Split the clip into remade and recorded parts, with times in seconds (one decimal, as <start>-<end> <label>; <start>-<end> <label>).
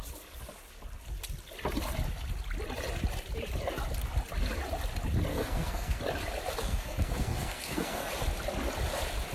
0.0-5.3 recorded; 5.3-6.0 remade; 6.0-6.6 recorded; 6.6-8.1 remade; 8.1-9.3 recorded